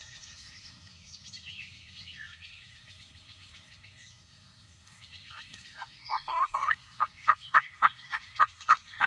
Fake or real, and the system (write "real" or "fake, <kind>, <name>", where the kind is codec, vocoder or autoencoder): fake, codec, SNAC